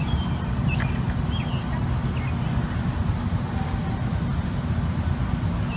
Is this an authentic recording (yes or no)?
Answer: yes